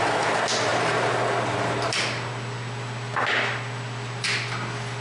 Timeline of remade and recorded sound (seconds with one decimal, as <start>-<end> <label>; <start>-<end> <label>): 0.0-5.0 recorded